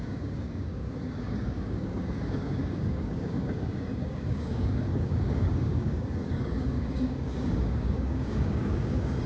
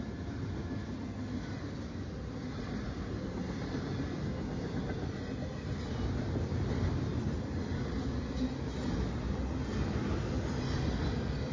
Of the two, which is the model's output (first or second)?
first